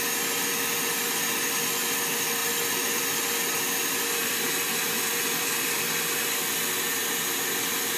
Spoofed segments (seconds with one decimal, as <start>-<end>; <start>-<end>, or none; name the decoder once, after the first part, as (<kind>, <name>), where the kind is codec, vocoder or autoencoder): 4.2-5.1 (vocoder, BigVGAN v2)